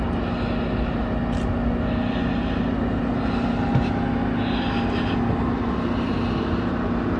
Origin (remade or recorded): recorded